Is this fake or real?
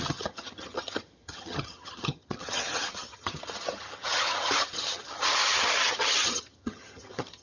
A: fake